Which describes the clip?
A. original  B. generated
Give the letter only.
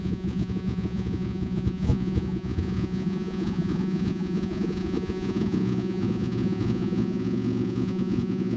B